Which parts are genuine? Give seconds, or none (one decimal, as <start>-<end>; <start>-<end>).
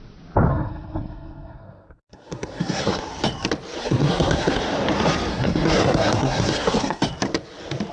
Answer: 0.0-0.5; 3.0-3.8; 4.6-5.3; 7.0-7.9